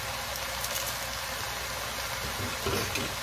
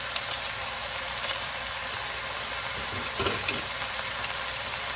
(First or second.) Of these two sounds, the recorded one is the first